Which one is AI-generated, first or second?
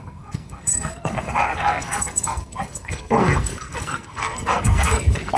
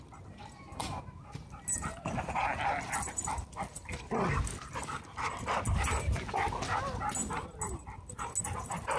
first